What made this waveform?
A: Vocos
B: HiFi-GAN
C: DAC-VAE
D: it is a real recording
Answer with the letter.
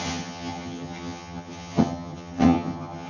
B